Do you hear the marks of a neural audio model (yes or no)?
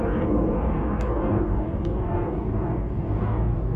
yes